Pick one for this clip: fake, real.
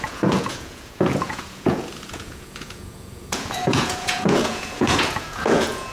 fake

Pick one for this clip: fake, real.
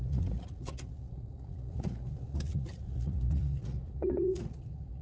fake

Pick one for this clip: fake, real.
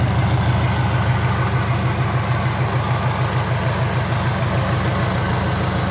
real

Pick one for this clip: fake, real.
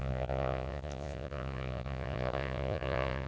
fake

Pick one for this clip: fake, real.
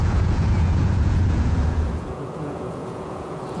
fake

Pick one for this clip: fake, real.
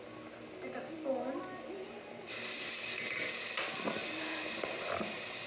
real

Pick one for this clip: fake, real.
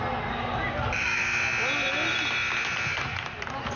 real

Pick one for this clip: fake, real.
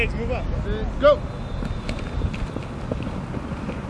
real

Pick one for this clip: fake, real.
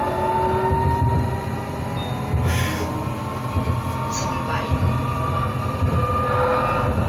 real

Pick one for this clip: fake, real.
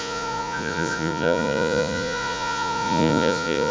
fake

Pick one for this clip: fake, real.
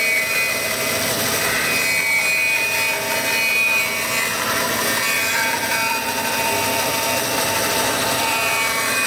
real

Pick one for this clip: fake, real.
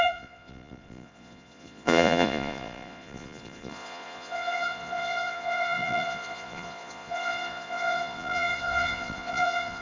fake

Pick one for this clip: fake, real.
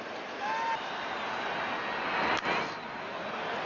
real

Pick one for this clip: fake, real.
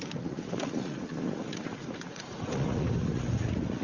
fake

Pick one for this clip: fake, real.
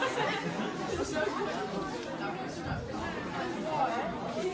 real